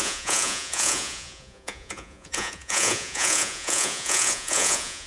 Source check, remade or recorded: remade